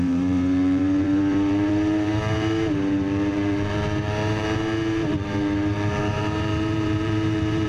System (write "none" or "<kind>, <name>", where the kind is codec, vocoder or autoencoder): vocoder, BigVGAN v2